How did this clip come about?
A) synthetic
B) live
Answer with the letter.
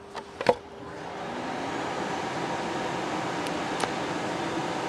B